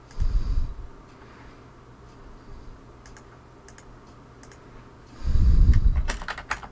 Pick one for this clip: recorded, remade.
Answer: recorded